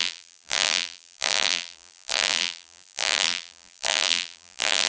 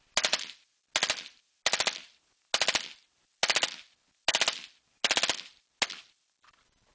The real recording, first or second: second